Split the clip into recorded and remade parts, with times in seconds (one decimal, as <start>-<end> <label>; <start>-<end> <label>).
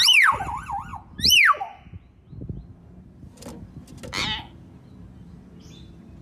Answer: 0.0-6.2 recorded